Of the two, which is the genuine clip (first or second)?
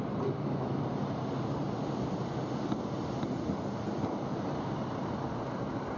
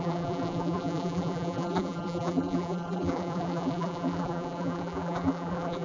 first